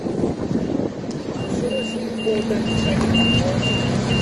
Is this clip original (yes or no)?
yes